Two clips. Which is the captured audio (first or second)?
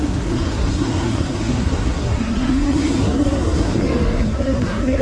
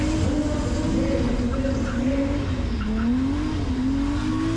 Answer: second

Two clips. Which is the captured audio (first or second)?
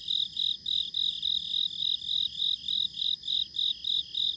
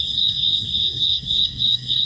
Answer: first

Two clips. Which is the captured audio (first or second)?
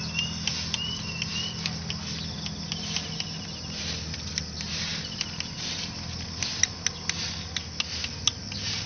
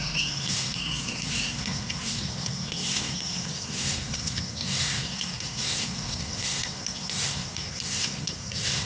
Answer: first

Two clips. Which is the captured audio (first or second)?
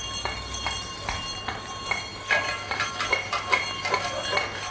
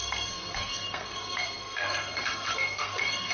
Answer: first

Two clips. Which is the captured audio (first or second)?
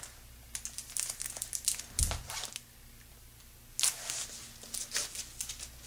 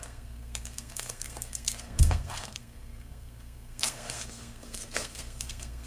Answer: first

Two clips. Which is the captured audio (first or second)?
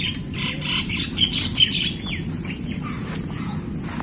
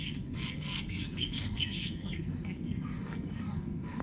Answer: first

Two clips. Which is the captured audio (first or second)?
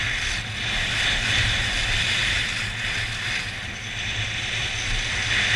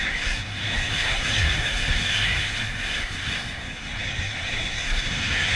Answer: first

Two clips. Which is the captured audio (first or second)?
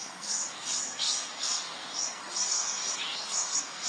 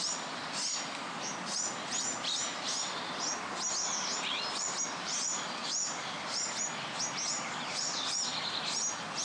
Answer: second